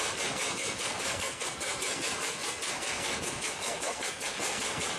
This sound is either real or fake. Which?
fake